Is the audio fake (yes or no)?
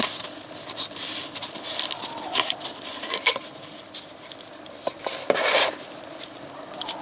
yes